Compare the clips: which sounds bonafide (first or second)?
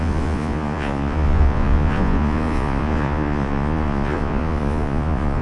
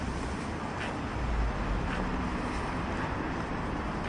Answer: second